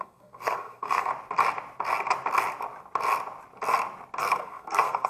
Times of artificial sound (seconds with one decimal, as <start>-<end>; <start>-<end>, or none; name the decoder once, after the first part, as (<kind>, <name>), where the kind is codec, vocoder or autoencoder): 0.0-1.1 (codec, SNAC); 4.2-5.1